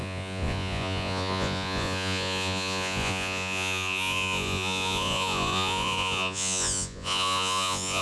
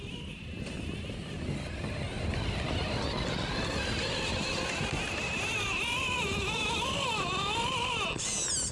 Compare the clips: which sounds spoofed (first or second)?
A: first